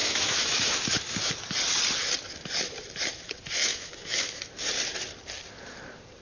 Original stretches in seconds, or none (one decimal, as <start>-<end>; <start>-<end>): 1.3-3.6; 4.4-6.2